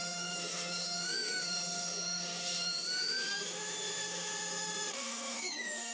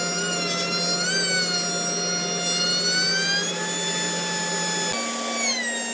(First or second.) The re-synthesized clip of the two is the first